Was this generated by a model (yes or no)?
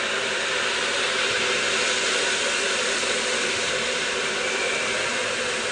yes